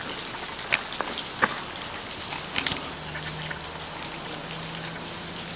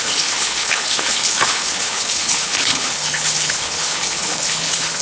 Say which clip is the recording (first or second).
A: first